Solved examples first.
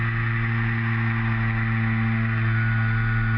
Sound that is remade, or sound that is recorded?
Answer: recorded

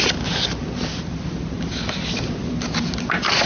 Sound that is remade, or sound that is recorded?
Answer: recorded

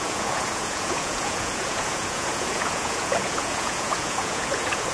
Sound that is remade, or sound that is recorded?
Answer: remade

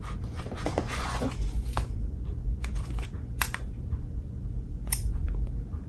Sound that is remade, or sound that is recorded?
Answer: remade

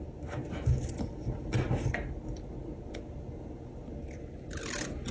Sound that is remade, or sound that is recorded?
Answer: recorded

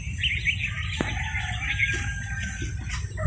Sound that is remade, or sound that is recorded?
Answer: recorded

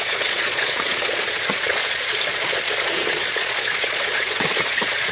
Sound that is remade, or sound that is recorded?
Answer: remade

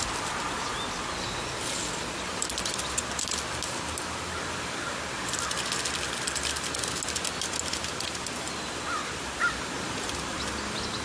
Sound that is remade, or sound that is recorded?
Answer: recorded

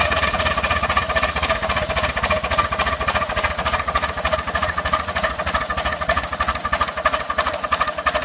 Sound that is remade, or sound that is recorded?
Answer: remade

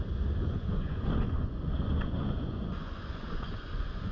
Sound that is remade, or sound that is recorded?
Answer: remade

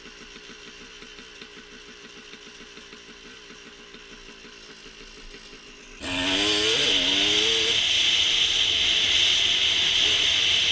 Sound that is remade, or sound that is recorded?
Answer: recorded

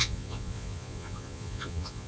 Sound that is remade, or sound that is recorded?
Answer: remade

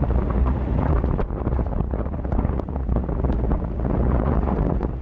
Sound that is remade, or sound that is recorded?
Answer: remade